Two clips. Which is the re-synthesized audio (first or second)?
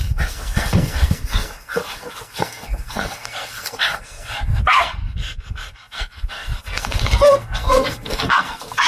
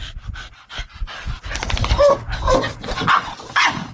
first